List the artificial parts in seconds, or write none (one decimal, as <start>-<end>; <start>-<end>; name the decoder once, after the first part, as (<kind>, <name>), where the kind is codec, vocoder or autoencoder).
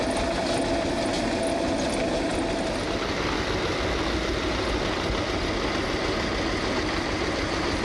none